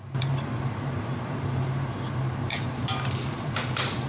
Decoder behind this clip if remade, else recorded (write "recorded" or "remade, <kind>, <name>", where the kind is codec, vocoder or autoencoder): remade, vocoder, BigVGAN v2